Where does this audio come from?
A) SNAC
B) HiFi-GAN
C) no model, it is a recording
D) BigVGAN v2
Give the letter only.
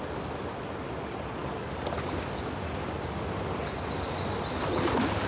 C